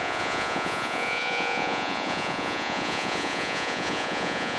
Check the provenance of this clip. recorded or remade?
remade